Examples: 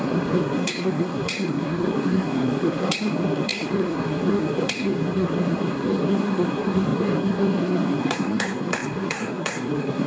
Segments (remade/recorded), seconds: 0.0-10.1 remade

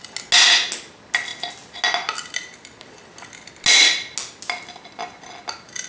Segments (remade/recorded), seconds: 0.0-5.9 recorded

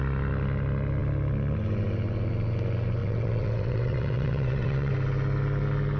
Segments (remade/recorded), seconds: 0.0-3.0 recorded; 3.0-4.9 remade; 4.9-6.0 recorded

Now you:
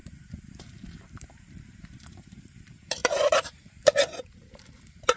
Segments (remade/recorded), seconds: 0.0-5.2 remade

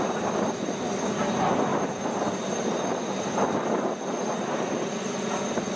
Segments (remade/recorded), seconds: 0.0-5.8 recorded

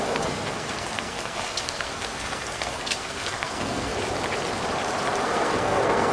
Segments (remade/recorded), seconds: 0.0-3.9 remade; 3.9-5.2 recorded; 5.2-6.1 remade